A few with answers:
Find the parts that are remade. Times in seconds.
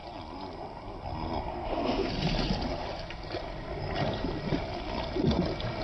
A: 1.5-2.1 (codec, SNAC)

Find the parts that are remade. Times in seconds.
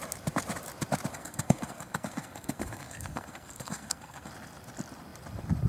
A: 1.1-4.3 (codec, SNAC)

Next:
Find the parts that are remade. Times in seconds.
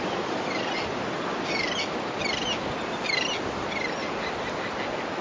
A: none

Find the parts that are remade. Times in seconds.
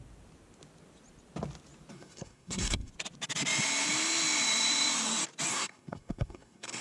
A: 1.9-2.9 (codec, SNAC); 5.5-6.8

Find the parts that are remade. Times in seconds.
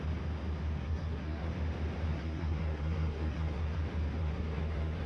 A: 0.8-1.5 (codec, SNAC); 2.0-3.8; 4.2-5.1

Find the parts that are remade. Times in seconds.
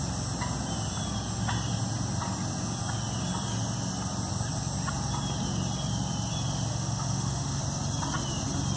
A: 6.7-7.6 (autoencoder, DAC-VAE)